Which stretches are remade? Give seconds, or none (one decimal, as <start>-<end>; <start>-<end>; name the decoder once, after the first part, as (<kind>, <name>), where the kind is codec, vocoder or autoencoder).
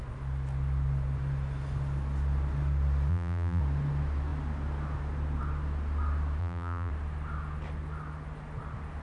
3.1-3.6 (vocoder, BigVGAN v2); 6.4-6.9